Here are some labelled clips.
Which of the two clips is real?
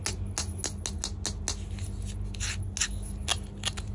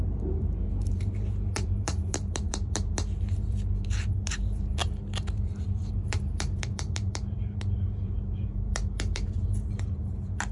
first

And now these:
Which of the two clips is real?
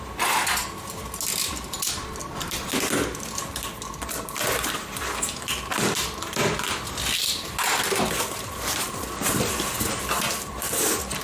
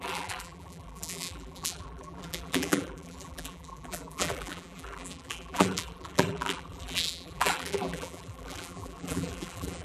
first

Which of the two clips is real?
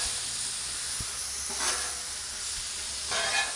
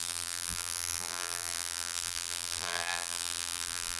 first